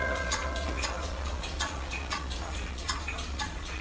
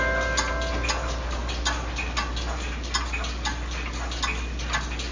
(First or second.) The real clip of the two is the second